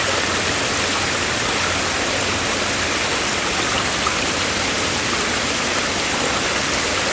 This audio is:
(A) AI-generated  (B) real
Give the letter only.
B